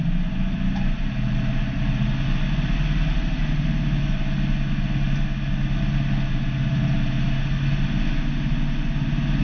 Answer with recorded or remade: recorded